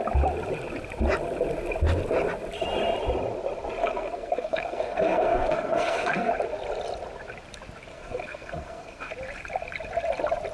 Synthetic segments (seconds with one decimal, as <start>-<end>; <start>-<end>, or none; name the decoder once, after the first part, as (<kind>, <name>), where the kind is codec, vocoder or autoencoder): 3.8-6.3 (codec, SNAC); 7.9-9.1